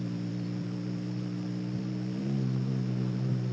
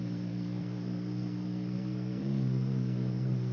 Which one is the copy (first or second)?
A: second